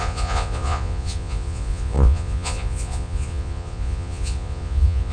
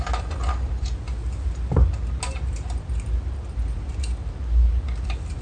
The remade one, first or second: first